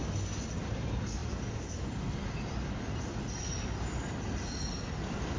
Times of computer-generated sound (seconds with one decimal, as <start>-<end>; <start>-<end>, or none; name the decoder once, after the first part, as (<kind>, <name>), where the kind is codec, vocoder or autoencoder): none